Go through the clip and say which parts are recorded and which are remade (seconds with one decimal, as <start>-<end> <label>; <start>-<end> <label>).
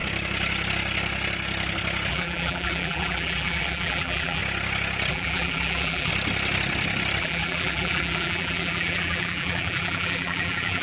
0.0-2.1 recorded; 2.1-4.4 remade; 4.4-5.1 recorded; 5.1-6.1 remade; 6.1-7.2 recorded; 7.2-10.8 remade